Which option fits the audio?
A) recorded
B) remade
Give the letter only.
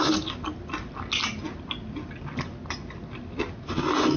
A